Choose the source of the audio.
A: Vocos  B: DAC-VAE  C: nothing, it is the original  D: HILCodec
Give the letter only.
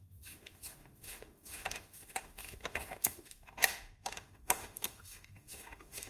B